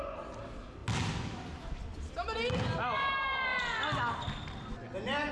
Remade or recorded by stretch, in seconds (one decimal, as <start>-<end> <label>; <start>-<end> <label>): 0.0-5.3 recorded